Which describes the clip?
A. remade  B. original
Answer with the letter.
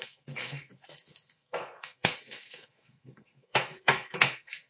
A